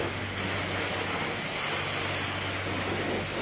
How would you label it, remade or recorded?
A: recorded